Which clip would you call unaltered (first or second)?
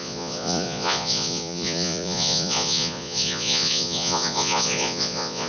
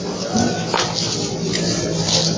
second